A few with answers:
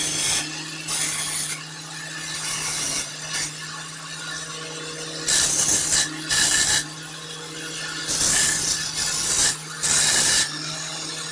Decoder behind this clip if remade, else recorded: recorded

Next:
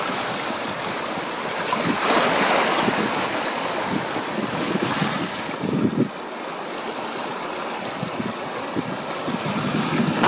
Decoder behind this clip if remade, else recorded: recorded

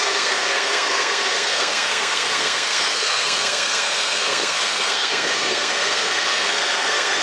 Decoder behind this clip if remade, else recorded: remade, codec, SNAC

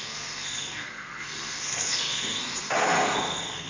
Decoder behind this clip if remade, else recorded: remade, codec, SNAC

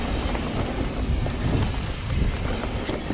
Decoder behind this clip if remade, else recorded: recorded